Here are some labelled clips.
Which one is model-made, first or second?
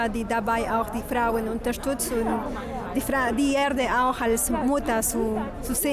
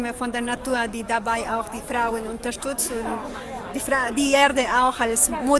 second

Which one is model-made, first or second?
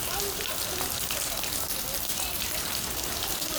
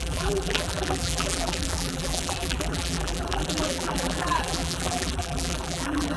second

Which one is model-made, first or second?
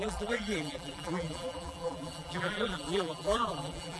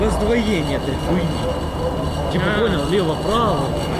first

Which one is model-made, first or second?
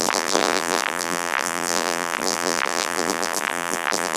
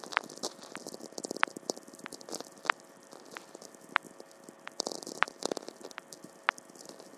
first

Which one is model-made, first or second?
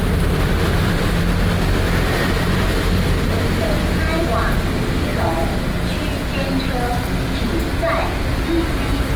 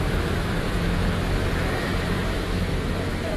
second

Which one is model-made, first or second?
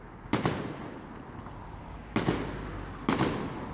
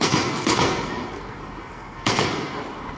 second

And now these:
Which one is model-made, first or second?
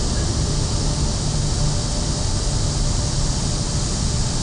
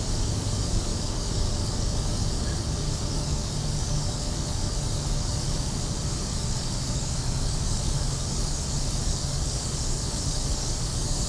second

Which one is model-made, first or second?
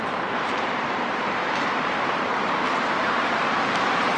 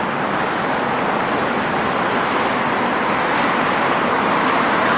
first